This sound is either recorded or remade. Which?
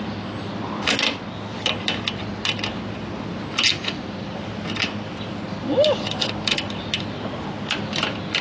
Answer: recorded